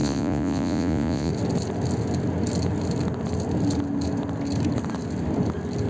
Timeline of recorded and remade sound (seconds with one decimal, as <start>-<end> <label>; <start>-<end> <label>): 0.0-1.3 remade; 1.3-5.9 recorded